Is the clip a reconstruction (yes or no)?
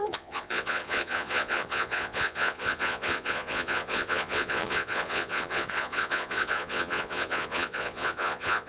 yes